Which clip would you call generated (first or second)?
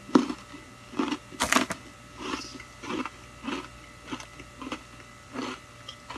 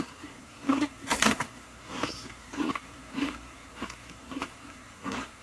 second